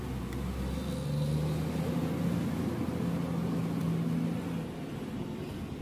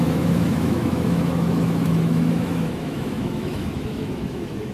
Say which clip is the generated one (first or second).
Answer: second